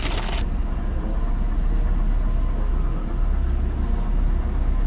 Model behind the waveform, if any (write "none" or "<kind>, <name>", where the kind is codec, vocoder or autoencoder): none